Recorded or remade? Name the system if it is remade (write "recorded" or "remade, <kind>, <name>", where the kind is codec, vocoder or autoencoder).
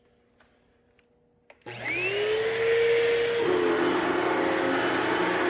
recorded